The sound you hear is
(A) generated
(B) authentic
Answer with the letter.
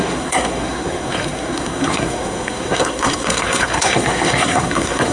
A